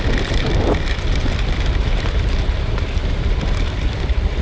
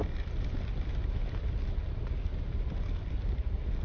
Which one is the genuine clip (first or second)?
second